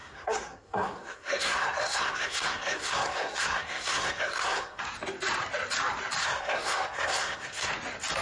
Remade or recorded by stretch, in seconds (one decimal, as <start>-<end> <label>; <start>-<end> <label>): 0.0-4.8 remade; 4.8-6.2 recorded; 6.2-7.7 remade; 7.7-8.2 recorded